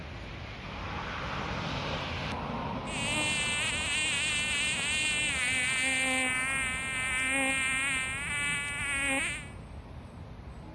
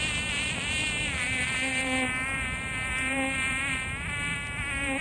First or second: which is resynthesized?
second